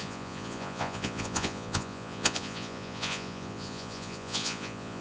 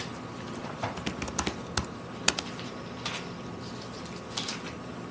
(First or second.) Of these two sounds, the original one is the second